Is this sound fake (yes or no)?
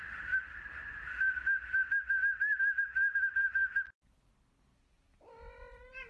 no